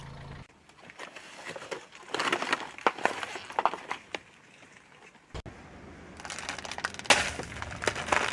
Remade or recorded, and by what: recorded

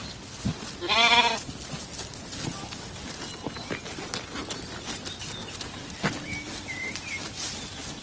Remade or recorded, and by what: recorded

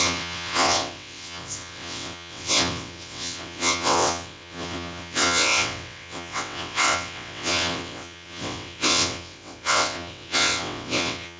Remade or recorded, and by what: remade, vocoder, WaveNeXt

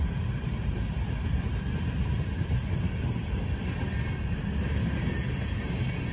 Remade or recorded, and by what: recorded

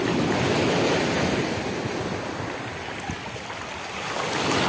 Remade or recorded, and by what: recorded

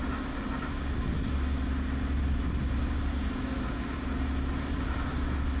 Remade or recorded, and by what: recorded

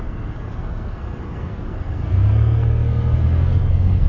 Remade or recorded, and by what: remade, codec, SNAC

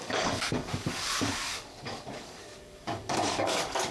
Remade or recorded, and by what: remade, codec, DAC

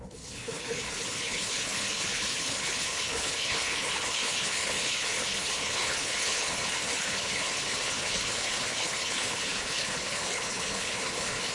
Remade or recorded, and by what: remade, codec, HILCodec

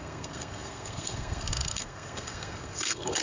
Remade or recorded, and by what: remade, codec, SNAC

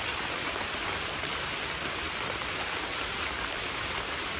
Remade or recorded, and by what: remade, vocoder, BigVGAN v2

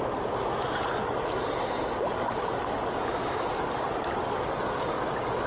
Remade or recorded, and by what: recorded